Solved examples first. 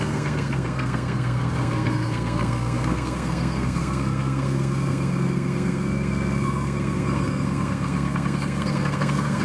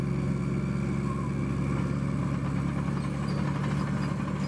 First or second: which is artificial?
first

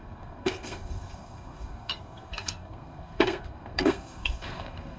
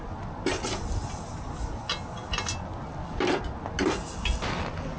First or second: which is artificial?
first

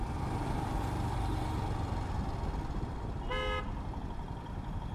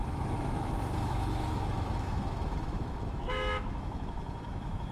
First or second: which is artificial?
second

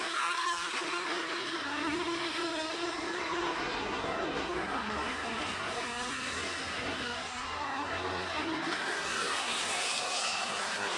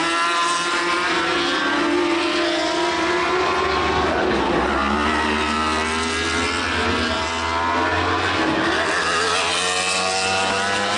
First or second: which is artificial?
first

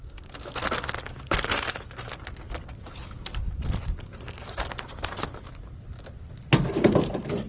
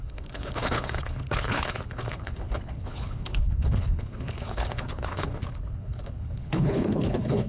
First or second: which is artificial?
second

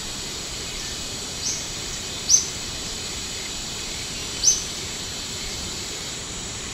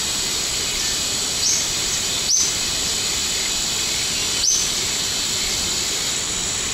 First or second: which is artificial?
first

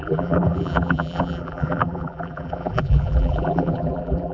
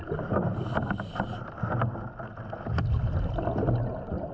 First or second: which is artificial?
first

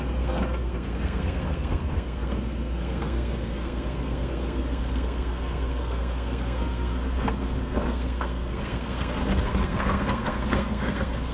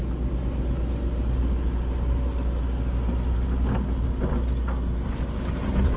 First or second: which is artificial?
first